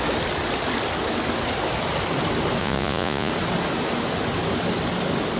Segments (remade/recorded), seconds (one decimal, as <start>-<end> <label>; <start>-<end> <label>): 0.0-2.6 recorded; 2.6-3.3 remade; 3.3-5.4 recorded